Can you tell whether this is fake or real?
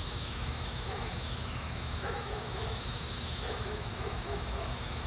fake